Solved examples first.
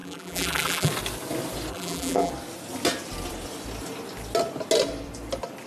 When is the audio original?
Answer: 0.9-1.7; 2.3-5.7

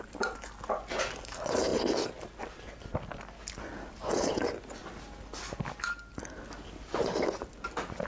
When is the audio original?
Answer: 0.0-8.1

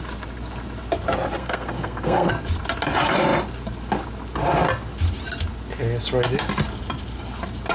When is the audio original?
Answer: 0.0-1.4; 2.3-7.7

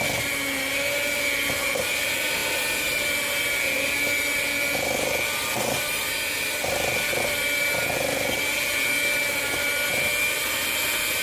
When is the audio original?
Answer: 0.0-11.2

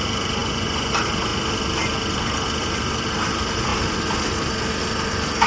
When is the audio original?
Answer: 0.0-0.4; 0.9-5.5

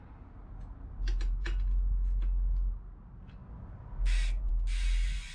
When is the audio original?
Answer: 0.0-5.3

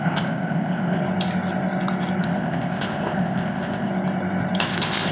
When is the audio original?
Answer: 1.0-2.2; 3.9-4.6